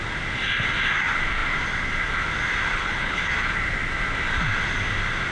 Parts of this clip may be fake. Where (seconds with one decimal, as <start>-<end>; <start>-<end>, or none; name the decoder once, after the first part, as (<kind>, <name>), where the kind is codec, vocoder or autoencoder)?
2.7-3.3 (codec, HILCodec)